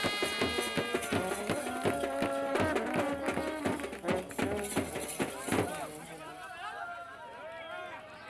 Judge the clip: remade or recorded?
recorded